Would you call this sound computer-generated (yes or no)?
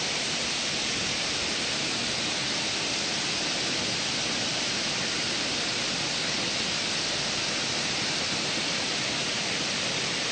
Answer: no